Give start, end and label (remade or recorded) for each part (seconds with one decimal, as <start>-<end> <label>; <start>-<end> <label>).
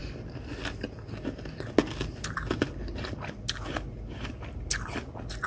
0.0-5.5 recorded